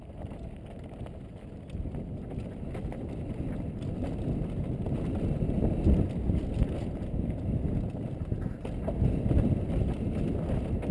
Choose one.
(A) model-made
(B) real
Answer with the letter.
B